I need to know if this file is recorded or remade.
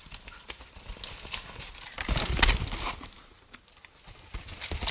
recorded